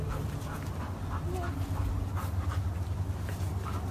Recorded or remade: recorded